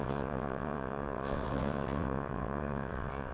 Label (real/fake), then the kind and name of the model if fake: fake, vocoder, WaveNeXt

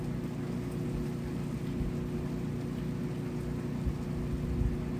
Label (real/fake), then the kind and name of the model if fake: real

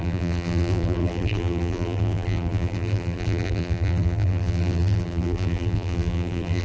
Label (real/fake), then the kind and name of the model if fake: fake, vocoder, BigVGAN v2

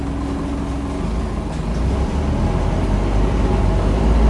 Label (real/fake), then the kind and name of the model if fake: real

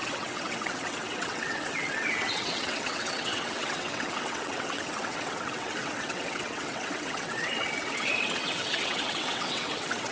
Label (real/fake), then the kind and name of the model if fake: fake, vocoder, WaveNeXt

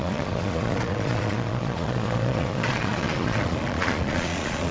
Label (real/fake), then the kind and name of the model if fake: fake, vocoder, Vocos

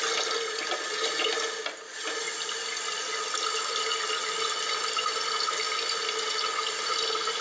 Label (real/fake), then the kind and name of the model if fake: real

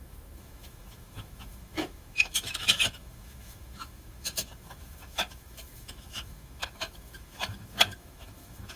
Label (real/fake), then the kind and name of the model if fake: fake, autoencoder, DAC-VAE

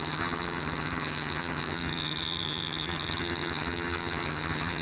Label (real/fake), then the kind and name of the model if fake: fake, vocoder, HiFi-GAN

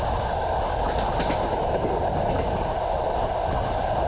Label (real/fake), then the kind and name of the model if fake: real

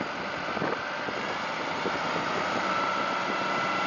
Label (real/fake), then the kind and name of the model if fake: real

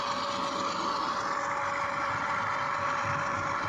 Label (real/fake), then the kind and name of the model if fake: real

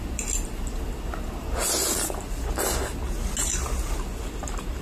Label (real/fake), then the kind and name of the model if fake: real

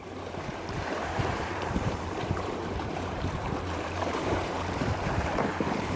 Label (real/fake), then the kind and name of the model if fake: fake, vocoder, BigVGAN v2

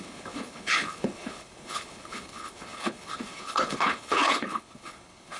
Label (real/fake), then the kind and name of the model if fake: fake, codec, HILCodec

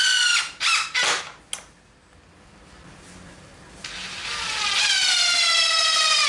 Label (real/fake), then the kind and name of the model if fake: real